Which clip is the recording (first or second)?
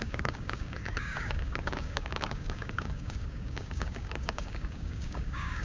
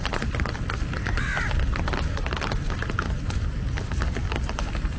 second